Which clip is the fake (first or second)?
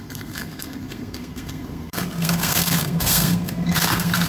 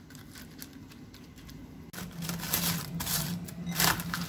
first